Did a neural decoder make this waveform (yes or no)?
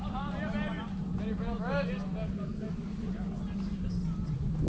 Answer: no